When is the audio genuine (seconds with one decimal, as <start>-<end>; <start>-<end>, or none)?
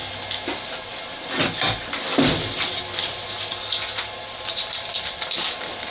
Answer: 0.0-5.9